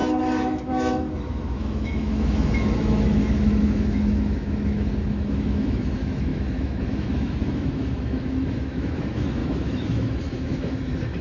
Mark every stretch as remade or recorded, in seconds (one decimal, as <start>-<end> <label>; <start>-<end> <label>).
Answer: 0.0-11.2 remade

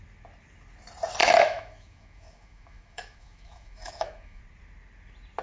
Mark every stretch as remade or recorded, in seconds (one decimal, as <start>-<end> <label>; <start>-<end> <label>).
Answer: 0.0-1.2 recorded; 1.2-4.4 remade; 4.4-5.4 recorded

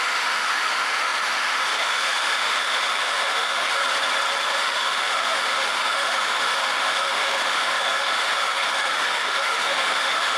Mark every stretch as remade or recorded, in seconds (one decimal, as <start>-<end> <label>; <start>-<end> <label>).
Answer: 0.0-3.8 remade; 3.8-4.4 recorded; 4.4-10.4 remade

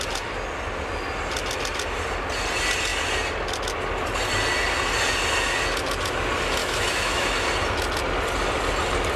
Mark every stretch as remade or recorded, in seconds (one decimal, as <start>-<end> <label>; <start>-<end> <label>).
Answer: 0.0-6.6 recorded; 6.6-7.3 remade; 7.3-9.2 recorded

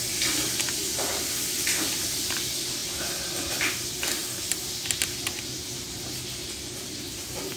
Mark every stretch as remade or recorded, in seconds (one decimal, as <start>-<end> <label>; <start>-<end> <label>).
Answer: 0.0-7.6 recorded

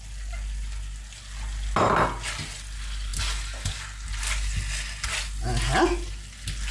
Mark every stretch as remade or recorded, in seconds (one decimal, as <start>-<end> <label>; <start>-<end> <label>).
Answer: 0.0-6.7 recorded

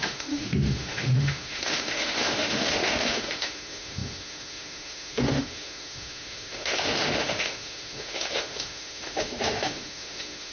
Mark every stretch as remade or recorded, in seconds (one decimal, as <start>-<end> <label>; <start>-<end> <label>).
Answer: 0.0-10.5 remade

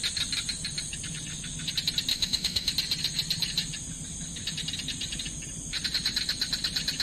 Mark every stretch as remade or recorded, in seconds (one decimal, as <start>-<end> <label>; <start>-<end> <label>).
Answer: 0.0-2.1 recorded; 2.1-2.7 remade; 2.7-7.0 recorded